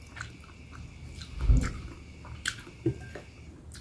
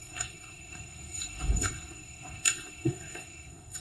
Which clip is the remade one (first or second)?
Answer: second